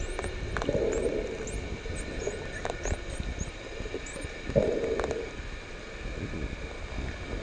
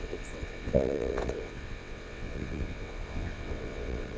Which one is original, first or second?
first